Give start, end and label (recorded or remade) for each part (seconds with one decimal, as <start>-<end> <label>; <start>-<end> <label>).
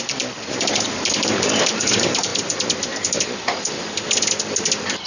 0.0-2.3 remade; 2.3-5.1 recorded